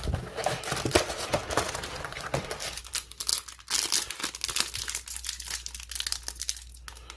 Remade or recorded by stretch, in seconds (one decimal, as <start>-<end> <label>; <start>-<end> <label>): 0.0-1.4 recorded; 1.4-2.8 remade; 2.8-7.2 recorded